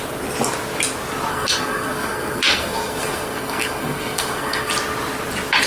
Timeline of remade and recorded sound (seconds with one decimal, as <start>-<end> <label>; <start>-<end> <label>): 0.0-1.3 recorded; 1.3-4.7 remade; 4.7-5.7 recorded